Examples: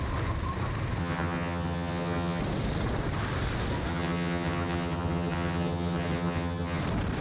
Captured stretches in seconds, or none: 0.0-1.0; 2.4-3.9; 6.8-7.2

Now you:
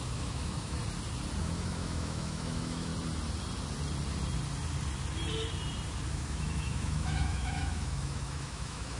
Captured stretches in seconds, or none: 0.8-1.4; 2.9-6.1

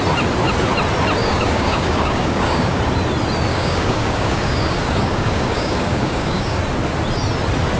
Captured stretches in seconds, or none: 0.0-1.2; 2.8-3.5; 6.6-7.8